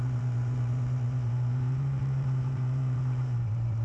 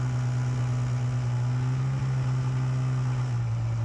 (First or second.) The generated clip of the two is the first